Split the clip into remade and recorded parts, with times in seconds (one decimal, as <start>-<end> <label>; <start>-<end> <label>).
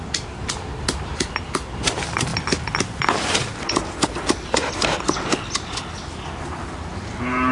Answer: 0.0-7.5 recorded